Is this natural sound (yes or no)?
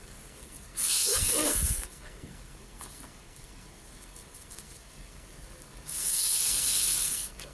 no